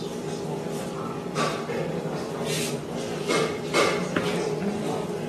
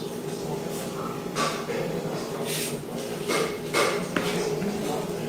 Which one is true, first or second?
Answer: first